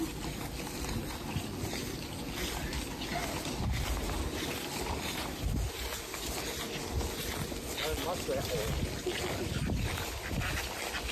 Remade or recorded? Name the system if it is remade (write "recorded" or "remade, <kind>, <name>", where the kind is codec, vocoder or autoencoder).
recorded